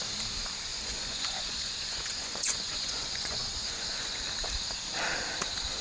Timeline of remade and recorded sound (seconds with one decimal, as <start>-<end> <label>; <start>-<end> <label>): 0.0-0.7 recorded; 0.7-4.2 remade; 4.2-5.8 recorded